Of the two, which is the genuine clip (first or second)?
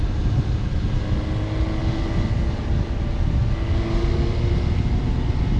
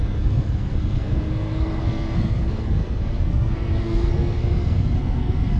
first